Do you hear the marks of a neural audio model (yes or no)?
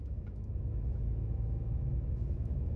yes